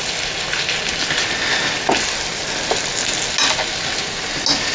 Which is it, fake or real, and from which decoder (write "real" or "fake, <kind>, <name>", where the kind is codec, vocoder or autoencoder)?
real